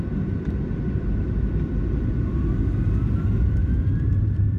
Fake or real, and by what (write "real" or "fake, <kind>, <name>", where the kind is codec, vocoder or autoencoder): real